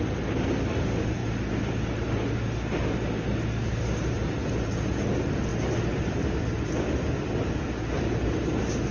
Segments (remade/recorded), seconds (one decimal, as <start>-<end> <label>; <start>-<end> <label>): 0.0-8.9 recorded